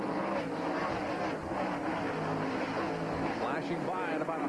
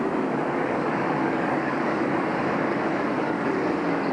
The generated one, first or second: second